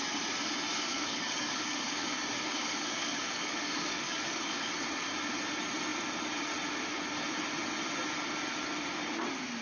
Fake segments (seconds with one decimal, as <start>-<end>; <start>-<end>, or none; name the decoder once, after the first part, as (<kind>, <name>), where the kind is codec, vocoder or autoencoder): 0.7-4.7 (codec, DAC)